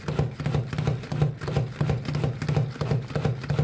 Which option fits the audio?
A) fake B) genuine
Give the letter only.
B